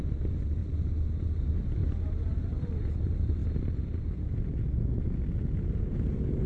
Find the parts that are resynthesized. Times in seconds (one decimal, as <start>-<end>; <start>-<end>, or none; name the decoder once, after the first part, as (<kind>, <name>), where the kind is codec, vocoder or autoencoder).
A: 0.0-0.6 (vocoder, BigVGAN v2); 1.4-1.8; 2.6-3.4; 4.4-6.5